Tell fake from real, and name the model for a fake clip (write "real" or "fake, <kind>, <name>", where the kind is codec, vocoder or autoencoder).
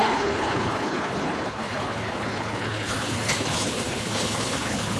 fake, codec, HILCodec